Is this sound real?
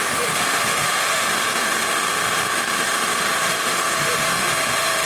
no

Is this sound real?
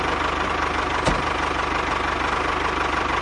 yes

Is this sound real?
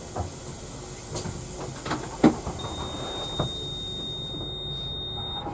yes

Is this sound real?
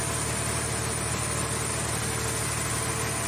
yes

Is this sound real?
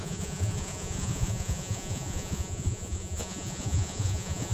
no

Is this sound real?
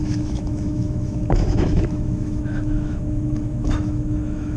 no